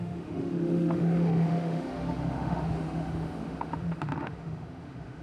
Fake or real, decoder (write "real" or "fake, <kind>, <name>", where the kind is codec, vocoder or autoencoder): fake, autoencoder, DAC-VAE